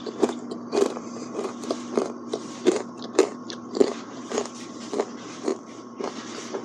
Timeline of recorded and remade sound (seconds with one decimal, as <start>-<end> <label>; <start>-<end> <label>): 0.0-4.4 remade; 4.4-5.1 recorded; 5.1-6.6 remade